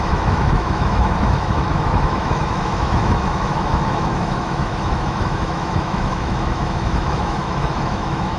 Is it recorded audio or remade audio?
remade